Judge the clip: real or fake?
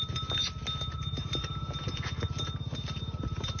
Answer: real